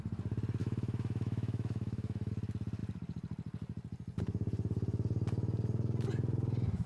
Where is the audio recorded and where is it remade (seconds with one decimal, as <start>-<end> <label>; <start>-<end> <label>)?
0.0-0.6 recorded; 0.6-2.3 remade; 2.3-6.9 recorded